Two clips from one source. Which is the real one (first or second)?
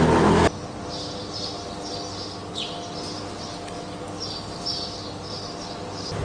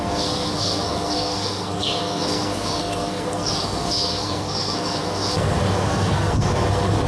first